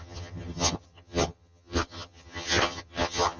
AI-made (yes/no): yes